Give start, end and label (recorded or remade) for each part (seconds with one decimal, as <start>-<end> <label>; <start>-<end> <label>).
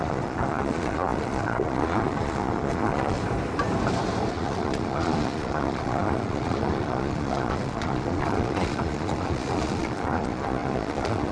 0.0-3.2 remade; 3.2-4.3 recorded; 4.3-11.3 remade